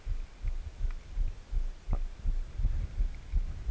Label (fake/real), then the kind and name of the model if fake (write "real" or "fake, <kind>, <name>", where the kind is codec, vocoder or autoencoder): real